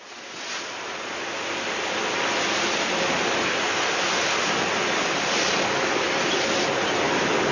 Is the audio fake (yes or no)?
no